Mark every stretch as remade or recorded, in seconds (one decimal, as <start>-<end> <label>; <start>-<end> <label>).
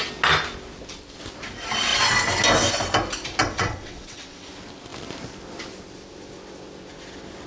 0.0-3.4 recorded; 3.4-4.5 remade; 4.5-7.5 recorded